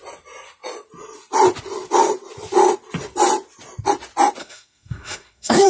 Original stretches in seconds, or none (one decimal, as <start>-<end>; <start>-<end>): 0.0-4.4